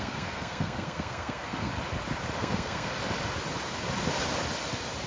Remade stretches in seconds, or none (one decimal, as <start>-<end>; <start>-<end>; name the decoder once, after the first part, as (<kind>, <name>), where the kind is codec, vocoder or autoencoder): 0.0-1.7 (codec, SNAC); 2.4-2.9